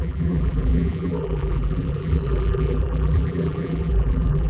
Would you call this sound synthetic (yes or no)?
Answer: yes